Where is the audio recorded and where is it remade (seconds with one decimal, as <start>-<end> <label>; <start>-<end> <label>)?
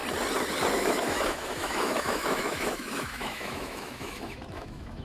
0.0-0.7 recorded; 0.7-5.0 remade